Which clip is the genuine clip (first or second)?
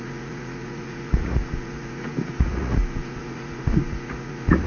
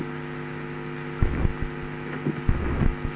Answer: second